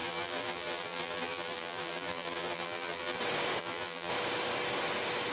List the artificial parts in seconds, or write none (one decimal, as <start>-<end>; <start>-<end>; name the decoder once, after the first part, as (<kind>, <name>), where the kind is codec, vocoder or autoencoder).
0.0-3.2 (vocoder, BigVGAN v2); 3.6-4.1